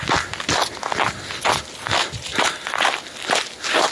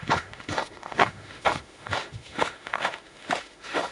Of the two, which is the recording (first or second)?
first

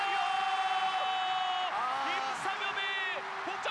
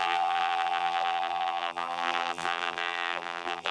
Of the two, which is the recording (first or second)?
first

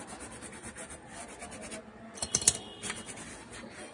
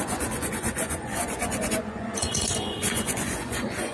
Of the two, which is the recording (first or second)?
first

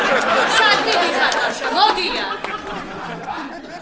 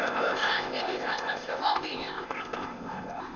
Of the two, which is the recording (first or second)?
first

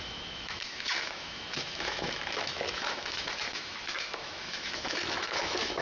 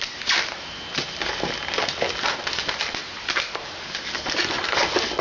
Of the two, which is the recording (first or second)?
second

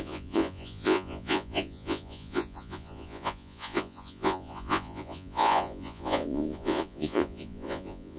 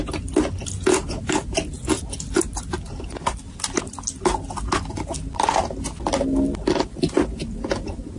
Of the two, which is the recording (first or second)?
second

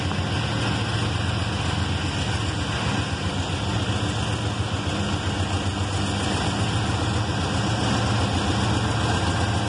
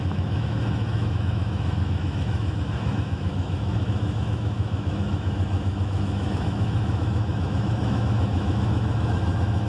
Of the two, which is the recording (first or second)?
first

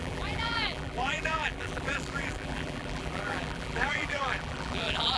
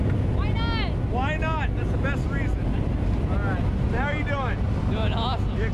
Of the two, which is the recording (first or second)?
second